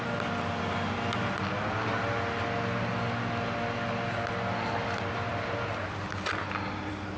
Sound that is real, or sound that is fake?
real